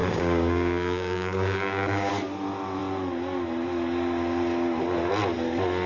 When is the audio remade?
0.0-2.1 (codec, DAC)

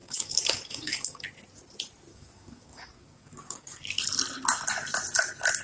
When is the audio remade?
0.0-1.2 (codec, DAC); 2.1-4.0

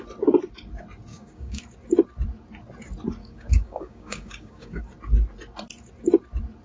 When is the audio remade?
1.1-1.6 (codec, DAC); 3.2-4.8

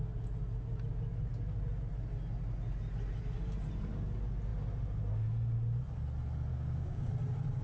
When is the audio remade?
6.5-7.1 (codec, DAC)